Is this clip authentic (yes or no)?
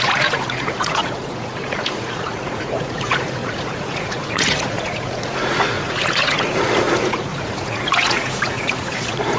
no